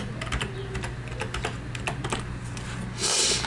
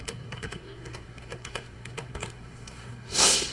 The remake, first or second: second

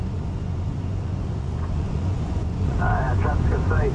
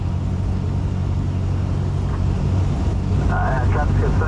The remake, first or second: first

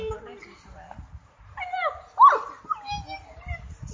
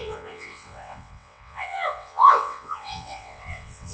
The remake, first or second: second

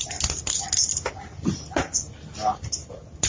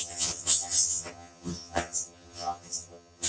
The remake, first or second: second